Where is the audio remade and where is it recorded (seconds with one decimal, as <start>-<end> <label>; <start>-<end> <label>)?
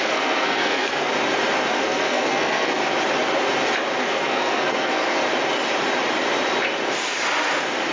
0.0-1.1 remade; 1.1-1.7 recorded; 1.7-2.8 remade; 2.8-4.0 recorded; 4.0-5.2 remade; 5.2-7.9 recorded